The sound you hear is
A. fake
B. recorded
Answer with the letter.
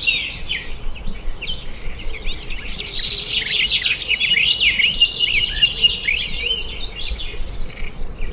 B